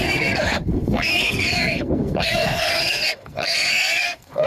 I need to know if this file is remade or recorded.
remade